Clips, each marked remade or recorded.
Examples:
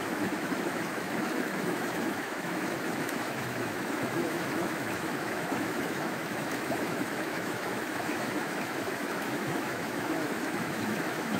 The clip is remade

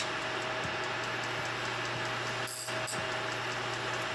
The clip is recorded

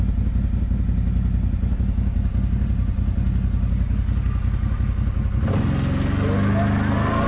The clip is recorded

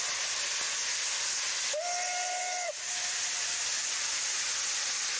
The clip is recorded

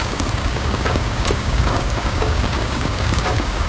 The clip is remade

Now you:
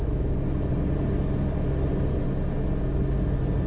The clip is recorded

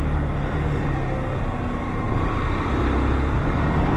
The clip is recorded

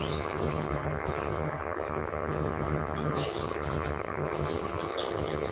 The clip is remade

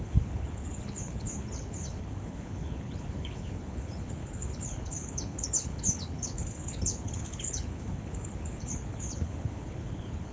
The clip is remade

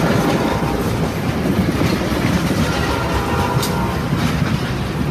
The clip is recorded